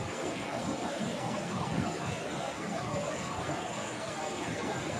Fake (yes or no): yes